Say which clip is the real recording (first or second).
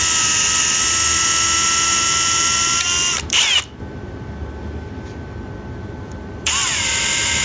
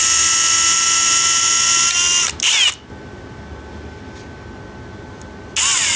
second